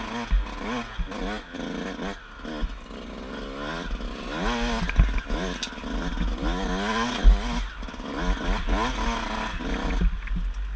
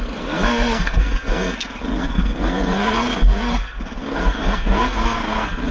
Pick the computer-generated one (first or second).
second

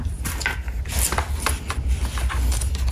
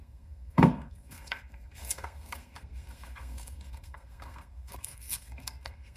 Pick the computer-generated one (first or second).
second